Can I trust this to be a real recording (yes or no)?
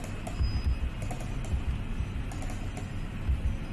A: yes